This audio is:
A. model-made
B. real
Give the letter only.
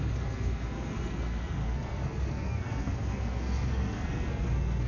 A